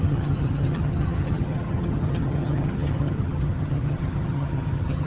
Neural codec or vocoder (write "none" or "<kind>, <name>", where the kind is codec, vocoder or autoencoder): vocoder, HiFi-GAN